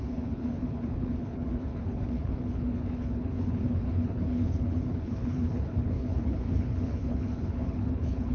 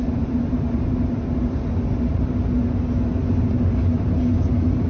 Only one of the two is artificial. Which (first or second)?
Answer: first